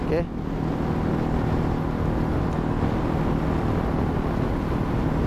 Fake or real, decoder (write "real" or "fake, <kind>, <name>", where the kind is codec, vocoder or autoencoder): real